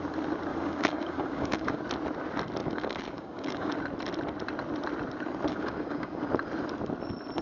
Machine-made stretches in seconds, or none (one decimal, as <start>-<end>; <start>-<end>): 0.5-1.8; 2.6-3.7; 5.5-6.2